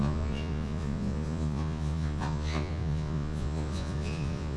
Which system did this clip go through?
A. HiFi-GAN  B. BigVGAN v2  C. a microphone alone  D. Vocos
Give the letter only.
D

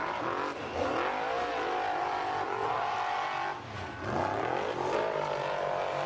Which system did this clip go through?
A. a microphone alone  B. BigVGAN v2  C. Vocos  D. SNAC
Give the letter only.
A